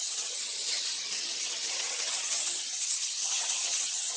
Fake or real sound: fake